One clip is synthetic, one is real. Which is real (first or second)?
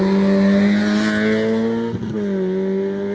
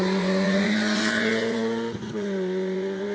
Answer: first